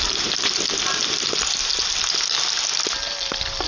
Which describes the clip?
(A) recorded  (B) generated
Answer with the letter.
A